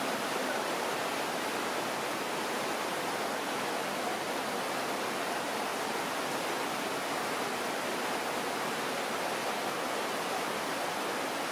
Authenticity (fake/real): real